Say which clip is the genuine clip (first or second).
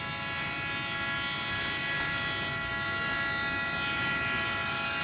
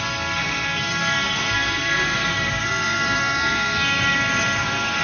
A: first